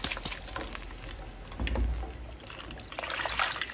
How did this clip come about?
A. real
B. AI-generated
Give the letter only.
A